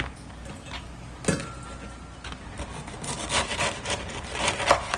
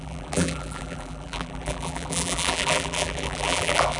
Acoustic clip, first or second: first